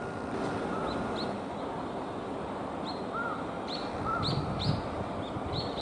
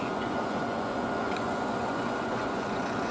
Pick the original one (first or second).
first